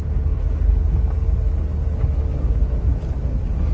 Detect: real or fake real